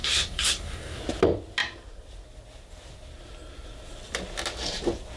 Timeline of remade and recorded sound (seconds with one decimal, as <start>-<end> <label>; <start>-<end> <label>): 0.0-1.0 remade; 1.0-5.2 recorded

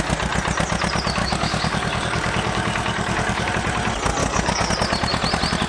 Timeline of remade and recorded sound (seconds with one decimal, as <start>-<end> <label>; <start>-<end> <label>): 0.0-1.2 recorded; 1.2-3.5 remade; 3.5-4.2 recorded; 4.2-4.7 remade; 4.7-5.7 recorded

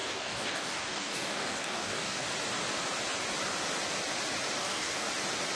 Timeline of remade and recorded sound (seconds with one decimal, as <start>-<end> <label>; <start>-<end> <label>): 0.0-2.3 remade; 2.3-4.6 recorded; 4.6-5.1 remade; 5.1-5.6 recorded

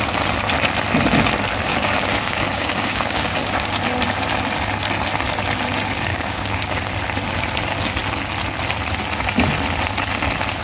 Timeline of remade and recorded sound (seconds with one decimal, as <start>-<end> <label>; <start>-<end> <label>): 0.0-1.7 recorded; 1.7-3.7 remade; 3.7-6.1 recorded; 6.1-6.9 remade; 6.9-10.6 recorded